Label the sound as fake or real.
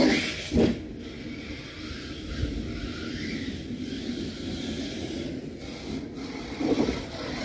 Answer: real